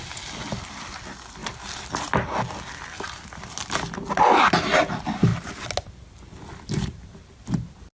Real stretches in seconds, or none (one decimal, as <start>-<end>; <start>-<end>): 0.0-8.0